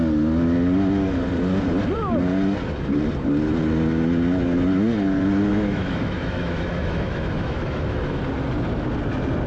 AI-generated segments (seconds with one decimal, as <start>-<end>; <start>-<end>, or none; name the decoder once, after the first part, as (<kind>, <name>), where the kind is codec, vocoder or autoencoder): 5.5-8.2 (autoencoder, DAC-VAE)